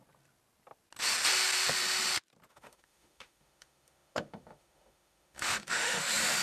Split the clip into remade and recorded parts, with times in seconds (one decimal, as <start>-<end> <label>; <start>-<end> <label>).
0.0-2.5 recorded; 2.5-6.0 remade; 6.0-6.4 recorded